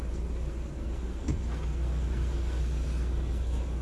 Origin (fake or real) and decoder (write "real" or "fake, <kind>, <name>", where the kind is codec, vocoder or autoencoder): fake, codec, SNAC